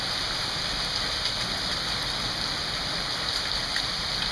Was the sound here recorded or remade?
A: recorded